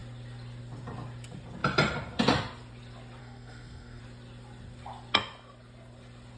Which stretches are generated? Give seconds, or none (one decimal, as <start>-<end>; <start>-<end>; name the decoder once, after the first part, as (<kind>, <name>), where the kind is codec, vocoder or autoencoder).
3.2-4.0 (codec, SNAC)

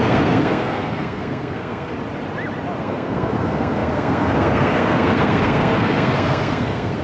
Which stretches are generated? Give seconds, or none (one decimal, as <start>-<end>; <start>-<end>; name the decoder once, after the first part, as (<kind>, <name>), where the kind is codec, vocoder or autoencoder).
0.0-1.9 (codec, SNAC); 2.8-7.0

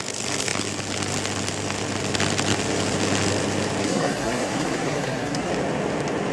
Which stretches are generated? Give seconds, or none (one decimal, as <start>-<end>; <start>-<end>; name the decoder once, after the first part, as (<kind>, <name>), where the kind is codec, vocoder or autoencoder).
3.8-5.5 (codec, SNAC)